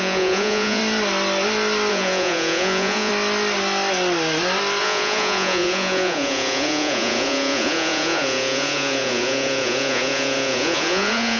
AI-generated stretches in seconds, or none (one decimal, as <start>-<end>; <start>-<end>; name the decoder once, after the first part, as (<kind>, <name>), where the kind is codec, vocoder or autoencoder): 0.0-0.8 (vocoder, Vocos); 1.9-3.1; 4.8-11.4